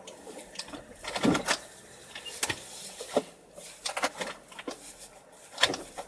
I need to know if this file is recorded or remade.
recorded